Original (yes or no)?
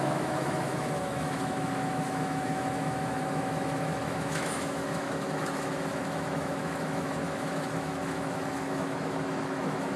no